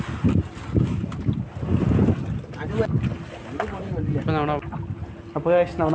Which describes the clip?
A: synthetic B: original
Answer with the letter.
B